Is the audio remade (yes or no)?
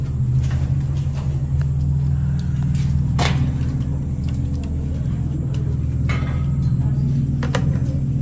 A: no